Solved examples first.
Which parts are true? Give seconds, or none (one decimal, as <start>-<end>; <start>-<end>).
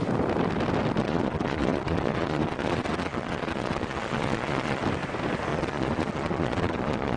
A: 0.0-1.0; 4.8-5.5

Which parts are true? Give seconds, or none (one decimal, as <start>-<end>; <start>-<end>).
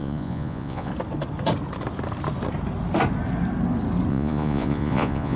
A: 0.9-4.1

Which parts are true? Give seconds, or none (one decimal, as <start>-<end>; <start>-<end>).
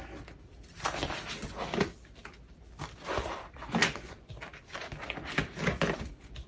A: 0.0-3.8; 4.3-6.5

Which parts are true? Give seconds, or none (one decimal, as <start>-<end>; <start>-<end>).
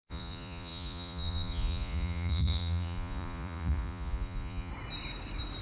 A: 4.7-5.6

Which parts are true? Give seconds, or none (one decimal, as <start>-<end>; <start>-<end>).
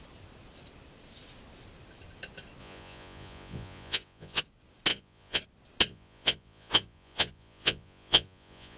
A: 0.0-2.6; 4.4-4.9; 5.4-5.9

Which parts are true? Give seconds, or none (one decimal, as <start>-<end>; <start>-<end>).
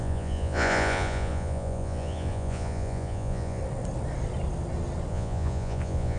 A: 3.6-5.1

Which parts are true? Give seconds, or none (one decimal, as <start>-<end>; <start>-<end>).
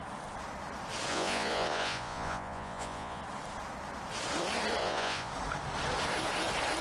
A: 0.0-1.1; 3.2-4.8; 5.3-6.8